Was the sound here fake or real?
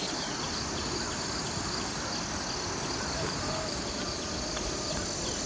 real